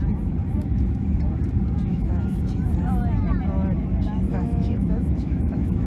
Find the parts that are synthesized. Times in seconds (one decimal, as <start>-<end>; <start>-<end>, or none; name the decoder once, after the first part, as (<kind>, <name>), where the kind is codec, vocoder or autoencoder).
1.9-2.4 (autoencoder, DAC-VAE); 4.3-5.9